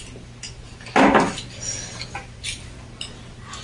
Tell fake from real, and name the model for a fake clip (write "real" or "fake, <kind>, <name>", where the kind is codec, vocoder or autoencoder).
real